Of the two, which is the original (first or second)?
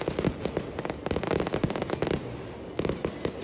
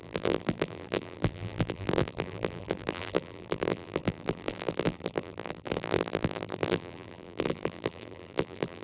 first